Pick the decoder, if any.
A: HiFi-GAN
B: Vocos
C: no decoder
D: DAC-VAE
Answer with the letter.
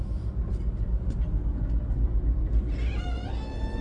C